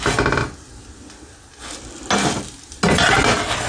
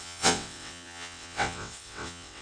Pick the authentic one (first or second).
first